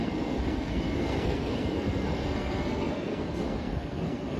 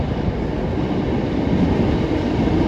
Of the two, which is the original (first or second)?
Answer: second